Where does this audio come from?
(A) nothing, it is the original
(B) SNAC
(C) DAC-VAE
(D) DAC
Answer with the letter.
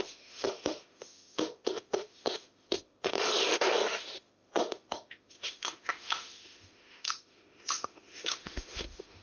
C